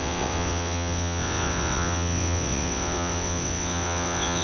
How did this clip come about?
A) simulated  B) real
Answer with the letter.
A